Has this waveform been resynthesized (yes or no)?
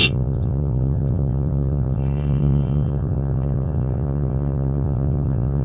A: yes